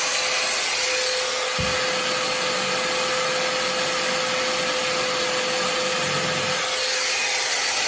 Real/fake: real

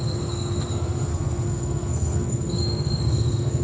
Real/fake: fake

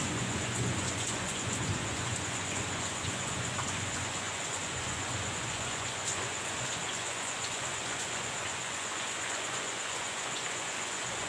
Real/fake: fake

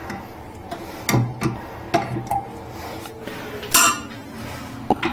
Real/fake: real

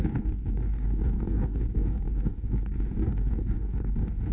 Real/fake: fake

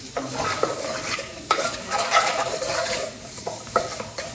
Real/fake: fake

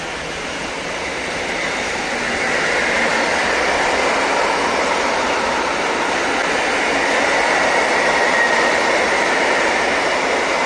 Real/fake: real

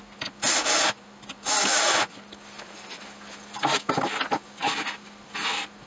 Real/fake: real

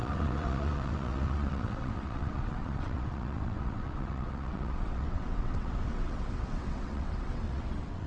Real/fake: fake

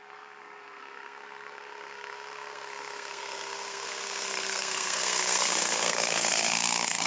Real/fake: fake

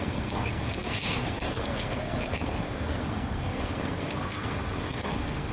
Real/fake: fake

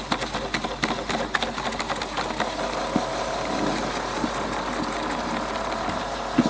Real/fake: real